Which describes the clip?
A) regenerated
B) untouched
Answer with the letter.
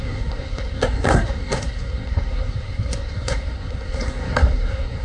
A